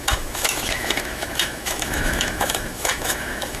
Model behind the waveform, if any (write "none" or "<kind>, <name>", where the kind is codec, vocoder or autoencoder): autoencoder, DAC-VAE